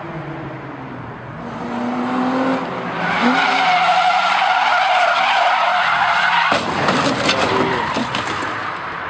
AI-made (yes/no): no